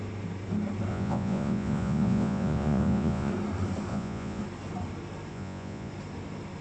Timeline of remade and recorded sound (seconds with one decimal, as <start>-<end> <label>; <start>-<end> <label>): 0.0-0.9 recorded; 0.9-3.3 remade; 3.3-3.9 recorded; 3.9-4.4 remade; 4.4-5.3 recorded; 5.3-5.9 remade; 5.9-6.6 recorded